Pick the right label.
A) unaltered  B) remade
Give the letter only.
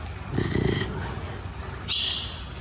A